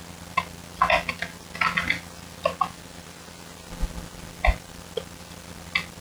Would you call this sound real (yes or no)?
yes